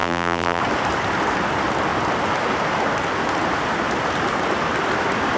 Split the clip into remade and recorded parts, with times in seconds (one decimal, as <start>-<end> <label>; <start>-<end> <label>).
0.0-0.6 remade; 0.6-5.4 recorded